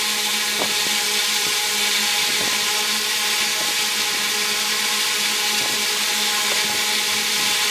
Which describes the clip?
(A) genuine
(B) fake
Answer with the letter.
A